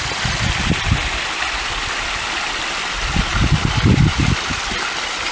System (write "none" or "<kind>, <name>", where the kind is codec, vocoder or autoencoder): none